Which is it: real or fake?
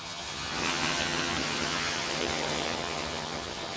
fake